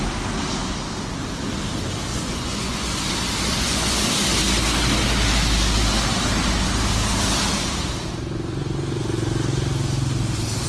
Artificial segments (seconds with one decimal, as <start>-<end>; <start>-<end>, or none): 2.1-3.0; 3.5-4.0